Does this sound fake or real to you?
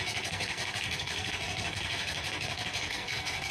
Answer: fake